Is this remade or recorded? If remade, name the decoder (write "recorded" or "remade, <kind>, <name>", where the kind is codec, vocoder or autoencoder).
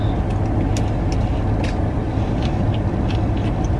recorded